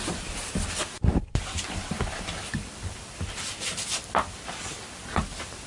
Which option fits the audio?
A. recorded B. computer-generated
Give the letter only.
B